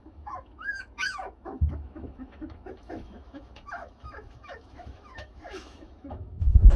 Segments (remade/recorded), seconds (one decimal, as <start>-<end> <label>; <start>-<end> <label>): 0.0-6.8 remade